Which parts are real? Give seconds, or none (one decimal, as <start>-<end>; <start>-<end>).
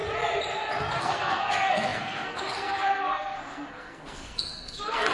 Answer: 0.0-1.0